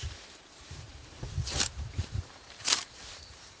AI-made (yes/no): yes